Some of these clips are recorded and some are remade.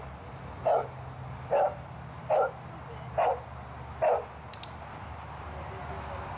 recorded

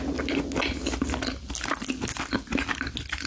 recorded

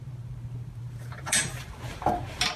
remade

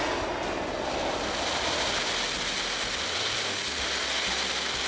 recorded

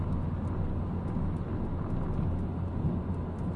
recorded